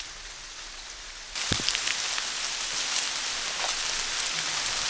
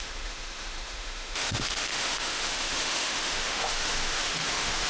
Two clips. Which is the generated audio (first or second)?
second